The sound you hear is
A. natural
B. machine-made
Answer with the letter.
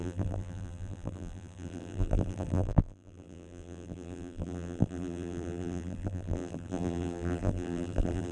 B